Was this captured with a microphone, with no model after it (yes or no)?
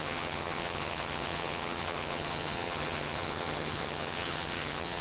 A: no